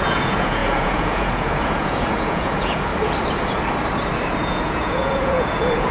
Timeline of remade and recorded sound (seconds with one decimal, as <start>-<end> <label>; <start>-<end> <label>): 0.0-2.9 remade; 2.9-4.4 recorded; 4.4-5.9 remade